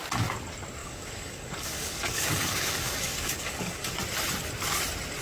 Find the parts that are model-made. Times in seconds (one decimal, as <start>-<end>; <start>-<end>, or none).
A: 0.8-3.9